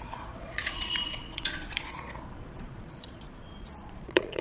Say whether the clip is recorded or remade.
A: remade